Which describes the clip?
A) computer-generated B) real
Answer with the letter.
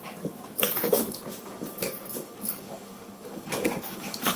A